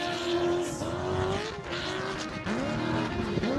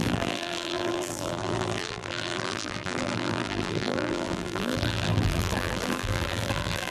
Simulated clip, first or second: second